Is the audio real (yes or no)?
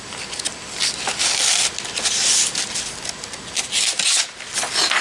yes